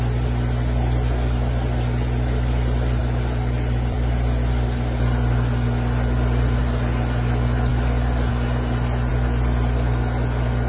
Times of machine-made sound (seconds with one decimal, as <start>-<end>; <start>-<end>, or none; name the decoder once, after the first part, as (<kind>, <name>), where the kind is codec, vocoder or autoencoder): 3.0-6.6 (vocoder, BigVGAN v2)

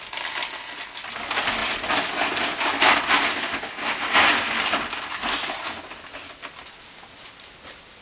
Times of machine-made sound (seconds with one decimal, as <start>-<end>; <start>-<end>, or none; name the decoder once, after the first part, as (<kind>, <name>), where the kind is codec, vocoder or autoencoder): none